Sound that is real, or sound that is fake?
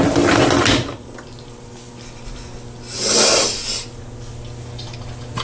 real